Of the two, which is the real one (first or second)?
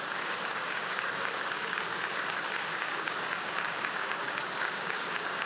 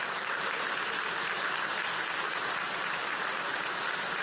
second